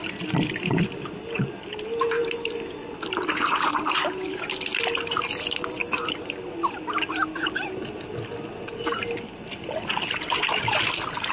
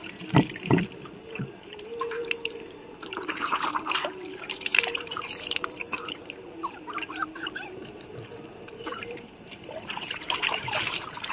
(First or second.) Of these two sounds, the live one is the first